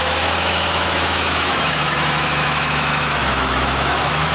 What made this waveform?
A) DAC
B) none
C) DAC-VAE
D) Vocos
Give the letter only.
C